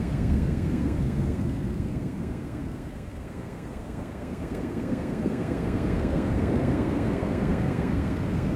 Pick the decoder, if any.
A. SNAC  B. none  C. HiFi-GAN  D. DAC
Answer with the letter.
A